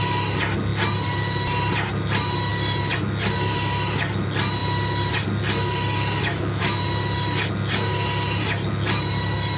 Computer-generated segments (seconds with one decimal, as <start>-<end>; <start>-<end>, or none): 6.3-6.8

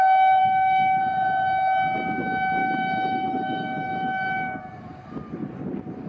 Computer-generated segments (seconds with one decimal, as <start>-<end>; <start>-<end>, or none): 0.4-1.0; 2.6-4.6

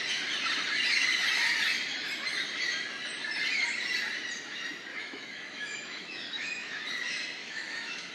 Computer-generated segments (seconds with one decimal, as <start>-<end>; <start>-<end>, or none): 4.9-6.8; 7.4-8.1